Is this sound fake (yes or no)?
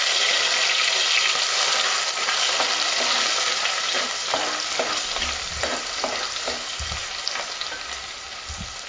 no